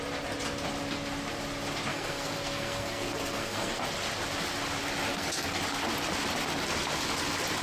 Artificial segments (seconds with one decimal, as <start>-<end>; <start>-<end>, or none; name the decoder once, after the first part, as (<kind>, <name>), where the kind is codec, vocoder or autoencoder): 1.9-3.8 (codec, SNAC); 5.1-5.6